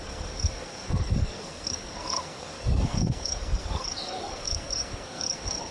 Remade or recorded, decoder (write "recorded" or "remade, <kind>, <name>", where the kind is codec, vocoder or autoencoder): remade, codec, SNAC